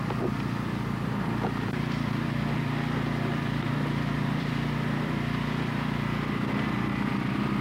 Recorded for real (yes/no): no